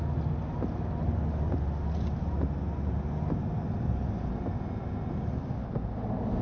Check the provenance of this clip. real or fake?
real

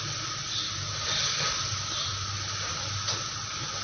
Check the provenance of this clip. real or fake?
real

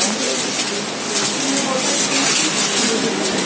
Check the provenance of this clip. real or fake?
real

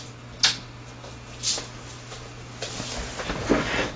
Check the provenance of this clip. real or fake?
real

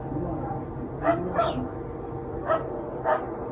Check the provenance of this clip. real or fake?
real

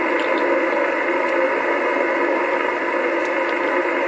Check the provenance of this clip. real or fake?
real